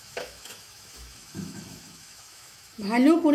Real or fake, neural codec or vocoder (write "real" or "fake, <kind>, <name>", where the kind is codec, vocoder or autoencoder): fake, autoencoder, DAC-VAE